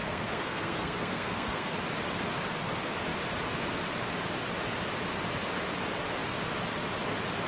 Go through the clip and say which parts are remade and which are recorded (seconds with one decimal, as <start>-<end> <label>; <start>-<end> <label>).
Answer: 0.0-1.7 remade; 1.7-7.5 recorded

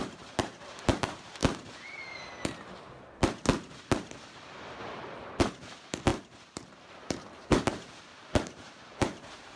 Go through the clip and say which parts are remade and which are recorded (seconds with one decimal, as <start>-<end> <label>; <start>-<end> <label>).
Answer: 0.0-1.4 remade; 1.4-3.8 recorded; 3.8-9.6 remade

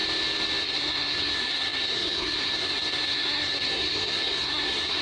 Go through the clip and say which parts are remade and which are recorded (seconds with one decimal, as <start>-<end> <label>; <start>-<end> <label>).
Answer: 0.0-0.6 recorded; 0.6-5.0 remade

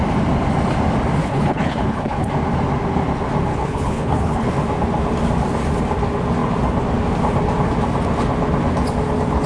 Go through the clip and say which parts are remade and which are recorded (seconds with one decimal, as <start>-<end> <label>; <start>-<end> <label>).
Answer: 0.0-1.2 recorded; 1.2-2.3 remade; 2.3-3.5 recorded; 3.5-4.5 remade; 4.5-9.5 recorded

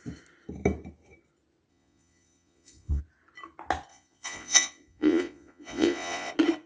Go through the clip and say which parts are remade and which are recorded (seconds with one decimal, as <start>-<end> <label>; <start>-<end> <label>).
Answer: 0.0-1.7 recorded; 1.7-3.0 remade; 3.0-3.9 recorded; 3.9-6.3 remade; 6.3-6.7 recorded